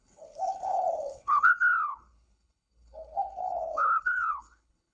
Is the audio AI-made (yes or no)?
yes